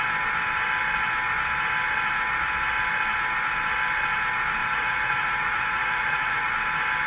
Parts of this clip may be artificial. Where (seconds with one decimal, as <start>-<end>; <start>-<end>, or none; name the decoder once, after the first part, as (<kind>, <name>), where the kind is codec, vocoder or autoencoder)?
4.6-6.5 (vocoder, Vocos)